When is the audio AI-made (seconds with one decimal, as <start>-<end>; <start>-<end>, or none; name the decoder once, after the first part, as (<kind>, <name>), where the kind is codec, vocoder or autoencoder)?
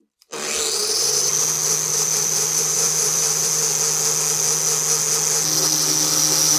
0.8-1.3 (vocoder, BigVGAN v2); 1.9-3.6